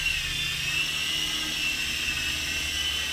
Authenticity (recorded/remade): recorded